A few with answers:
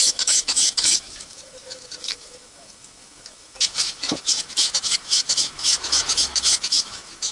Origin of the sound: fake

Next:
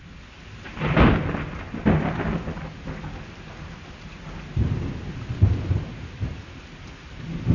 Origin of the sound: real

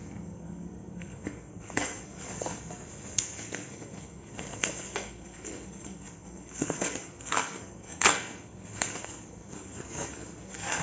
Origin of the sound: fake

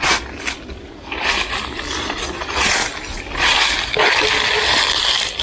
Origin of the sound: real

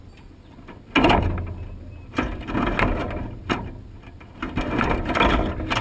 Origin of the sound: real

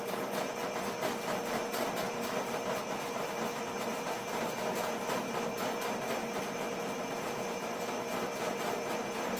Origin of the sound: real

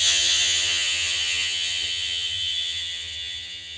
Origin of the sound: fake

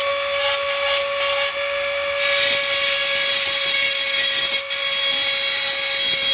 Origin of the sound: real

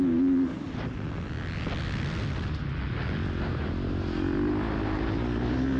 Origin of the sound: real